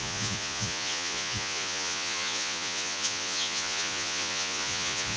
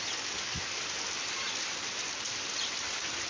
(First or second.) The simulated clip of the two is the first